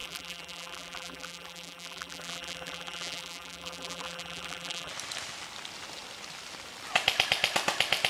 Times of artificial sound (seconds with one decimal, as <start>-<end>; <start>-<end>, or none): 0.0-4.9